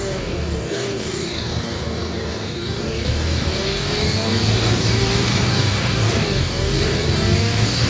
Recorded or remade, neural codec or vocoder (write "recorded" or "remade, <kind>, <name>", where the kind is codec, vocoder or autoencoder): remade, codec, DAC